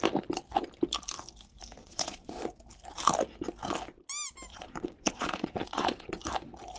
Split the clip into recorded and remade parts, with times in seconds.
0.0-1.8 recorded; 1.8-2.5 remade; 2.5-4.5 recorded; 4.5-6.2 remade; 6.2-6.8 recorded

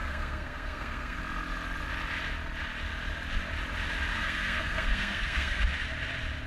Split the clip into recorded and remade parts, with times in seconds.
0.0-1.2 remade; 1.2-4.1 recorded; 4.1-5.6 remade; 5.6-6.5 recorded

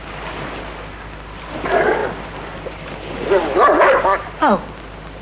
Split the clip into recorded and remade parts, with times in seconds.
0.0-5.2 recorded